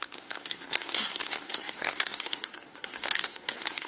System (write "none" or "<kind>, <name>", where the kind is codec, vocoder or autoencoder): codec, SNAC